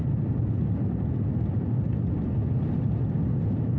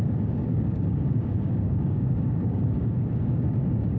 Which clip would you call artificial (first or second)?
second